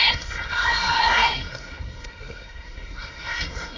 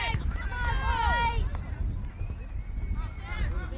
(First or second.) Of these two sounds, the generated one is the first